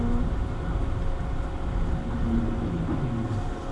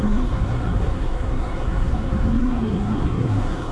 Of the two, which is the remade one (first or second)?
second